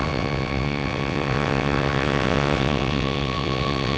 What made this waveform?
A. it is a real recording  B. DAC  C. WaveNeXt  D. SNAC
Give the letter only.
C